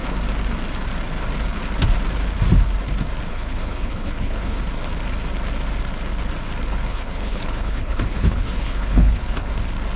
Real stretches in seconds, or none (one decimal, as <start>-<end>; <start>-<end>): 0.0-3.3; 4.6-6.9; 9.5-10.0